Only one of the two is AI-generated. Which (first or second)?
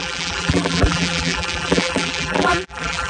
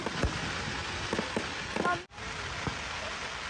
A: first